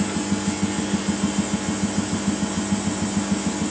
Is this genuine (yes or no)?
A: yes